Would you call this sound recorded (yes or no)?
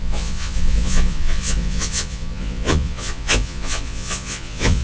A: no